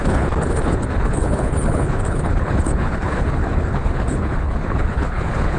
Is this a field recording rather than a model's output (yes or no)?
no